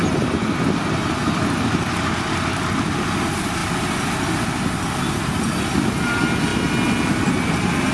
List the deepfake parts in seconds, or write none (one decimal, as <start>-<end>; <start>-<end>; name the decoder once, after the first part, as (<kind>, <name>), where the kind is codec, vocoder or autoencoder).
none